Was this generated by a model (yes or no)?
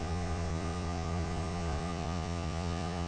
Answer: yes